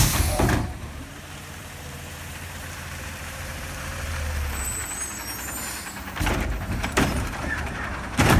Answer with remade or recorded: remade